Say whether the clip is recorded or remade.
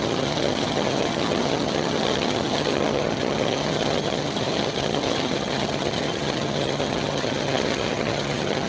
remade